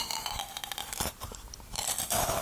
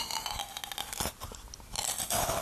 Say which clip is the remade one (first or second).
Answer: first